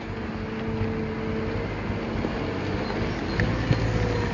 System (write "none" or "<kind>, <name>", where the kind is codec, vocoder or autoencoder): none